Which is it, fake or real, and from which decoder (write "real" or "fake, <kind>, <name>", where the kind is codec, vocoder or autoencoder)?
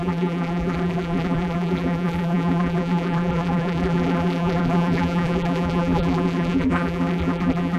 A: fake, vocoder, BigVGAN v2